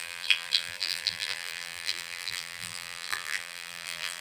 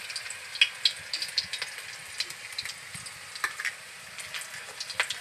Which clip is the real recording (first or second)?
second